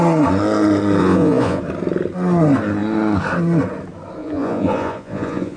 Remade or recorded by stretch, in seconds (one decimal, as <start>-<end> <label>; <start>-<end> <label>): 0.0-1.0 recorded; 1.0-1.6 remade; 1.6-4.2 recorded; 4.2-5.6 remade